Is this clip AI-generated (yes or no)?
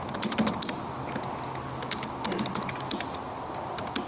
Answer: no